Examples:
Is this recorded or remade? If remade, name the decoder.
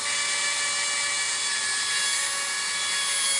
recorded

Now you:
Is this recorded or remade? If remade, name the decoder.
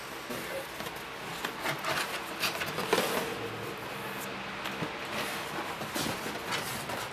recorded